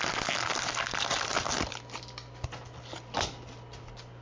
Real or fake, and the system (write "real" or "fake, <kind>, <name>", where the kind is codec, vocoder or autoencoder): real